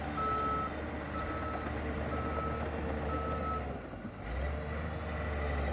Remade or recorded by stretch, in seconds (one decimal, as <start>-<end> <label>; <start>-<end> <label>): 0.0-5.7 recorded